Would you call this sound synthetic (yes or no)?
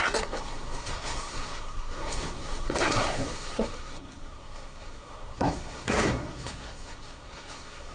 yes